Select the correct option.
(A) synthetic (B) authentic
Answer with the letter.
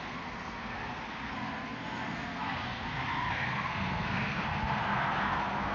A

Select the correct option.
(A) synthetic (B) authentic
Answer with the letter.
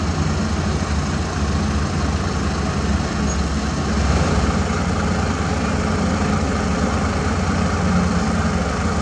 B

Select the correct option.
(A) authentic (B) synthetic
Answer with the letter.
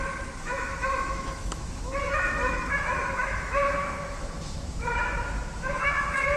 B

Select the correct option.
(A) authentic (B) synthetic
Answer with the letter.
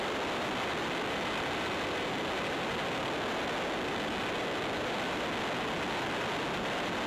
A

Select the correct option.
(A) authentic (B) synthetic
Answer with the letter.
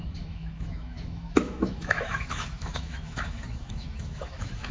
B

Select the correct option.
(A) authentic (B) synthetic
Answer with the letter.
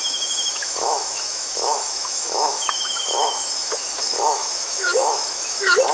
B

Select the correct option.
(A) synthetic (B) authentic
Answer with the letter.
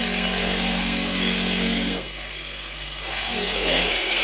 A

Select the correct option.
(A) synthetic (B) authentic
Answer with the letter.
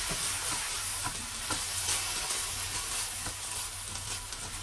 B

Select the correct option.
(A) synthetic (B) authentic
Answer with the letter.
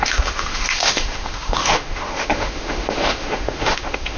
A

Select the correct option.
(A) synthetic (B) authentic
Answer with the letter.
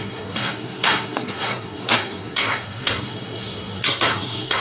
A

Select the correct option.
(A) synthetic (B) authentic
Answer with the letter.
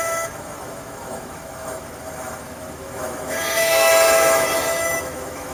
A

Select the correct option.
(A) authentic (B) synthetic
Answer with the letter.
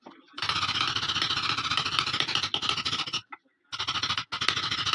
A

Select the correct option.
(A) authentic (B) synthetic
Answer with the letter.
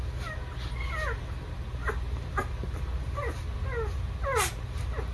A